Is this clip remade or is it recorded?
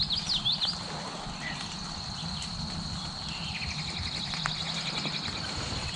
recorded